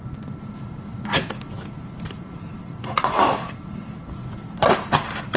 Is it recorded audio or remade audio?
remade